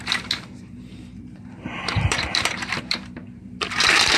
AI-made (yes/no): yes